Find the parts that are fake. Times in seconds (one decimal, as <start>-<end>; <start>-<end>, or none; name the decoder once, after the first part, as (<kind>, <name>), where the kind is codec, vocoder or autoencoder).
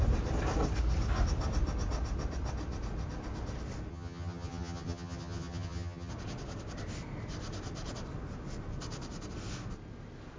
3.9-6.1 (vocoder, HiFi-GAN)